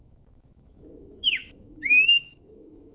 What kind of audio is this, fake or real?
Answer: fake